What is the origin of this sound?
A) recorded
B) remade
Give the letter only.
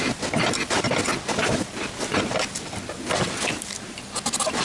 A